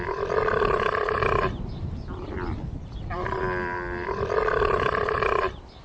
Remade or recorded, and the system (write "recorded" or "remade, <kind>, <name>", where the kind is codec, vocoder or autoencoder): recorded